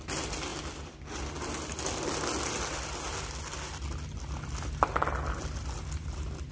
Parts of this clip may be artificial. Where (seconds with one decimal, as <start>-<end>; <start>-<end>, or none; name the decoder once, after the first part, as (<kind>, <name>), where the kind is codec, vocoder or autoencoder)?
none